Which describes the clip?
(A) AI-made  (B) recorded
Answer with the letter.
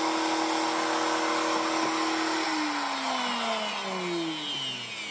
B